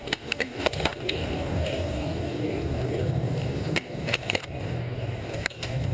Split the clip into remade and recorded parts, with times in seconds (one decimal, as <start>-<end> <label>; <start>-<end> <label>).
0.0-5.9 remade